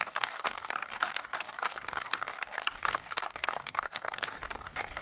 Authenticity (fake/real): fake